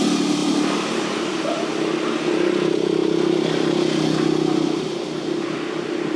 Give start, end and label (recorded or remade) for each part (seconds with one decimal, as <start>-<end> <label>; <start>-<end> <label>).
0.0-0.4 recorded; 0.4-1.3 remade; 1.3-3.0 recorded; 3.0-4.0 remade; 4.0-6.2 recorded